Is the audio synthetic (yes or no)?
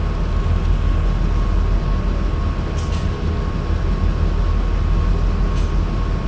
no